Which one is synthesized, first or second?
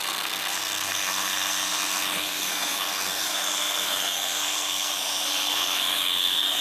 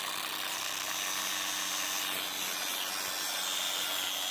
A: first